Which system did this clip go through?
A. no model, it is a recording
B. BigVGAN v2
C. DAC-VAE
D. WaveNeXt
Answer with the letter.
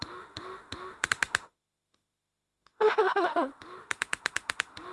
C